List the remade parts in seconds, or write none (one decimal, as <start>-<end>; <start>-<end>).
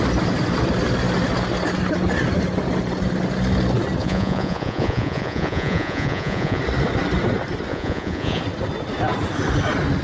4.0-6.6; 7.7-8.4